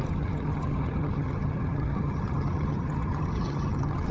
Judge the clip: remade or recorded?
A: remade